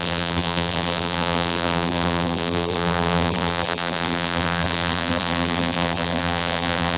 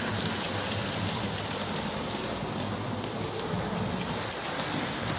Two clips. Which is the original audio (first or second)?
second